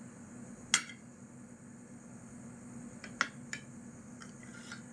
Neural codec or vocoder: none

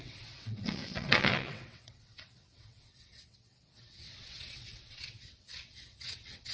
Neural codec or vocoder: vocoder, WaveNeXt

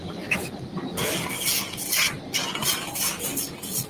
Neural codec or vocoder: none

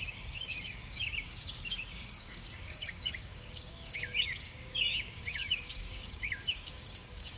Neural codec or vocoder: codec, DAC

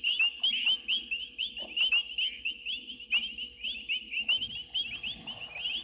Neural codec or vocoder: none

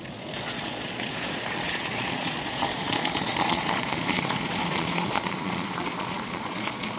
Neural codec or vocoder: vocoder, Vocos